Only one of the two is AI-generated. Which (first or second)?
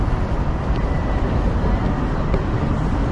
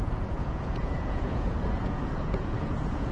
second